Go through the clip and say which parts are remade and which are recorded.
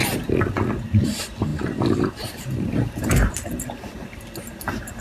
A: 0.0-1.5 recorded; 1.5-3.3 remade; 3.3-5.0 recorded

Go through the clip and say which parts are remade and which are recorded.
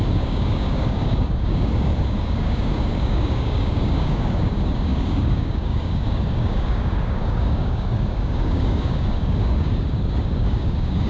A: 0.0-11.1 remade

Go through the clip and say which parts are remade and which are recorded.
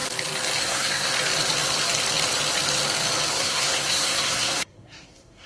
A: 0.0-0.6 recorded; 0.6-1.1 remade; 1.1-3.3 recorded; 3.3-5.5 remade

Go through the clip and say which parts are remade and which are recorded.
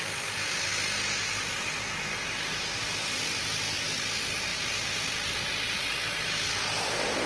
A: 0.0-7.3 recorded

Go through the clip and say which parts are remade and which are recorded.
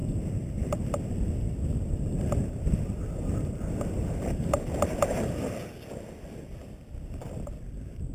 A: 0.0-4.8 remade; 4.8-6.6 recorded; 6.6-8.1 remade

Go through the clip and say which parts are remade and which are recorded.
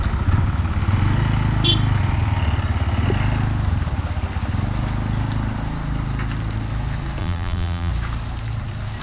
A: 0.0-7.2 recorded; 7.2-7.9 remade; 7.9-9.0 recorded